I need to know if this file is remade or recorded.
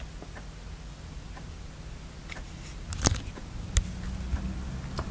recorded